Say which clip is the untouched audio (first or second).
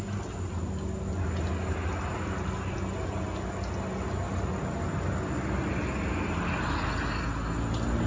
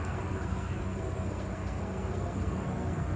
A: first